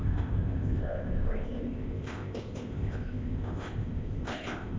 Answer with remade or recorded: remade